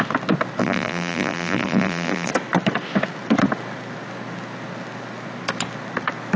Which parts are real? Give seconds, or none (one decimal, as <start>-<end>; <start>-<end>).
0.0-0.6; 2.3-6.4